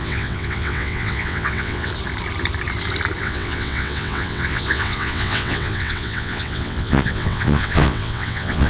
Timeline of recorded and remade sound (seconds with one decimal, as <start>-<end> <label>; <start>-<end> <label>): 0.0-1.9 remade; 1.9-3.2 recorded; 3.2-8.7 remade